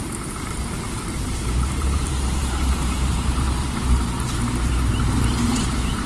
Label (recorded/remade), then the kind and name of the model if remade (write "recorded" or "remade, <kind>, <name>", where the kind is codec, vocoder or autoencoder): remade, vocoder, BigVGAN v2